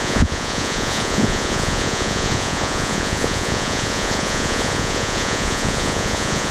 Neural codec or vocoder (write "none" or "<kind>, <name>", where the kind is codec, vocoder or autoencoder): vocoder, Vocos